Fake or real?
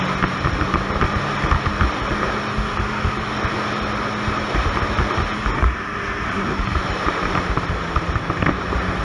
real